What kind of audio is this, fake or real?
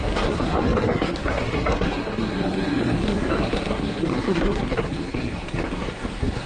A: fake